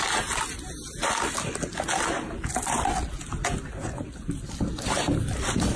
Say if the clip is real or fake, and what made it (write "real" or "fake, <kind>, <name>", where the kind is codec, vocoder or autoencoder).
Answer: real